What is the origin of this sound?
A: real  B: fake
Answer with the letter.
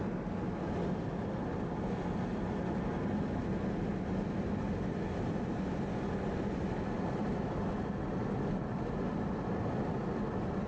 A